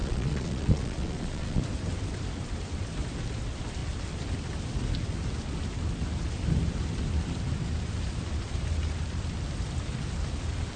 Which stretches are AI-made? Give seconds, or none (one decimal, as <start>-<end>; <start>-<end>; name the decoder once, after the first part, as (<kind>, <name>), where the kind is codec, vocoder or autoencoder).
0.0-1.6 (vocoder, Vocos)